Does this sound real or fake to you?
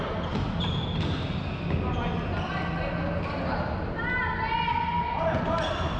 real